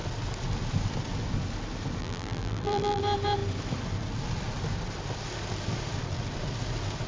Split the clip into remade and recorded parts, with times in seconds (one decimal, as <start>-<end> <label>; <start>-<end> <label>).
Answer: 0.0-2.0 recorded; 2.0-3.0 remade; 3.0-7.1 recorded